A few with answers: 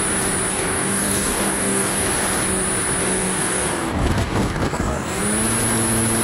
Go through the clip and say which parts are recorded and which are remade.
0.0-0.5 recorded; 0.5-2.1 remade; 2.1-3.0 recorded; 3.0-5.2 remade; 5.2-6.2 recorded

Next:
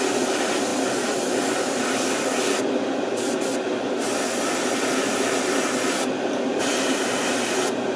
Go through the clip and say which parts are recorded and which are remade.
0.0-8.0 recorded

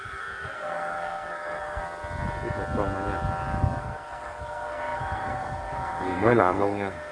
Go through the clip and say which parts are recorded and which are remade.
0.0-1.8 remade; 1.8-3.8 recorded; 3.8-7.1 remade

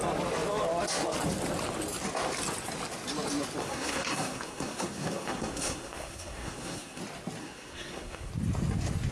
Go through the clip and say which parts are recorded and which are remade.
0.0-3.6 recorded; 3.6-7.0 remade; 7.0-7.4 recorded; 7.4-8.3 remade; 8.3-9.1 recorded